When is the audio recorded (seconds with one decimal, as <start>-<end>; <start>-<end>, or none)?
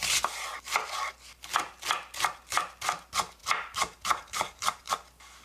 0.0-3.4; 4.9-5.4